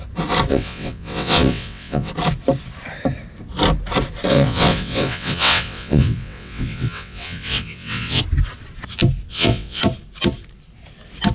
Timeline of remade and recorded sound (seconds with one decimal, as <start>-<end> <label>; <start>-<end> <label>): 0.0-0.5 recorded; 0.5-2.1 remade; 2.1-4.3 recorded; 4.3-8.2 remade; 8.2-9.3 recorded; 9.3-9.8 remade; 9.8-11.3 recorded